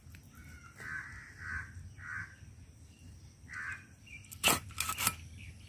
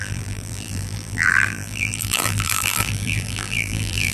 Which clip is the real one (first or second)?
first